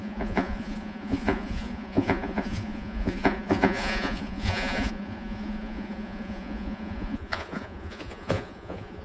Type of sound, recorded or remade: remade